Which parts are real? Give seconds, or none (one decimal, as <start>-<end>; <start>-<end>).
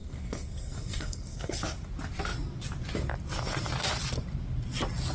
1.6-5.1